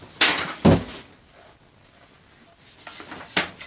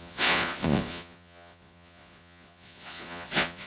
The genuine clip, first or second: first